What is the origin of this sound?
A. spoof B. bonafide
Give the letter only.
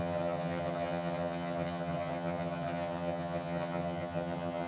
A